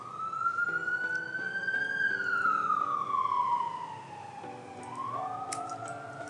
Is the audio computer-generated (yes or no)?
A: no